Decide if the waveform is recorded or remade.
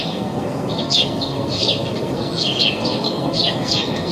remade